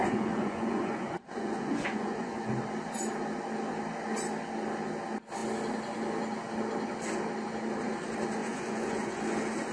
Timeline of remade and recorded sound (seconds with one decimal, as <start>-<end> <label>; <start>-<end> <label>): 0.0-2.5 remade; 2.5-8.4 recorded; 8.4-9.2 remade; 9.2-9.7 recorded